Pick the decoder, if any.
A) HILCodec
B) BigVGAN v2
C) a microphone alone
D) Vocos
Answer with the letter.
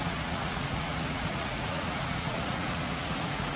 D